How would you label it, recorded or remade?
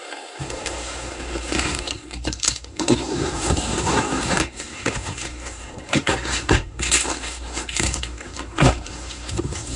remade